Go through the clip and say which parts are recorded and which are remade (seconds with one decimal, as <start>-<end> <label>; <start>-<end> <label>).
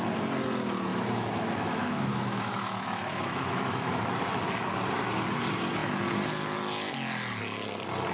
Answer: 0.0-0.9 recorded; 0.9-3.9 remade; 3.9-8.1 recorded